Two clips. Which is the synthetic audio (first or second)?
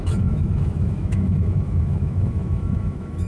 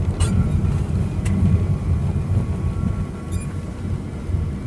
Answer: first